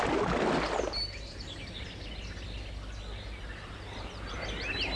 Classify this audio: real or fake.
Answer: real